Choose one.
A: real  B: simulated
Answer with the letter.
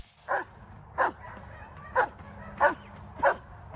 A